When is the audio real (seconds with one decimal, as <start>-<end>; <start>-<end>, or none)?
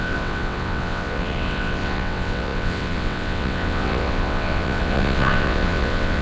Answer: none